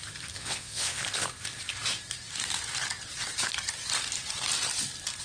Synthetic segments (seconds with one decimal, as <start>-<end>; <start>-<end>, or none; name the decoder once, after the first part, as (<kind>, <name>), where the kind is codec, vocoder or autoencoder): 0.4-1.0 (vocoder, WaveNeXt)